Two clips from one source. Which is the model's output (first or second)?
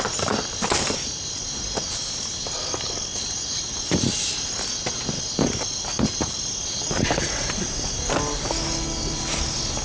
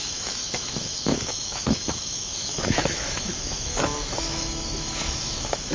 second